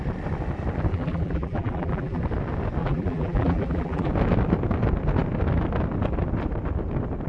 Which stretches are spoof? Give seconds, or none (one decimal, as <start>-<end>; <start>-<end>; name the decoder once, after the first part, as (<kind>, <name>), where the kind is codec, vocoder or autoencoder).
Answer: 0.9-2.2 (vocoder, BigVGAN v2); 2.8-4.1